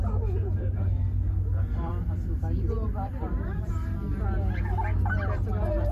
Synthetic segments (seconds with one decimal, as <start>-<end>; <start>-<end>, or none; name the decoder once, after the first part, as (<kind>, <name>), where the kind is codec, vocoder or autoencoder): 1.9-3.7 (vocoder, BigVGAN v2)